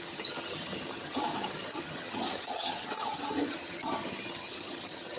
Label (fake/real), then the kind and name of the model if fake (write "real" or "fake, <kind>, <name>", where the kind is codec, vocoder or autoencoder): fake, vocoder, HiFi-GAN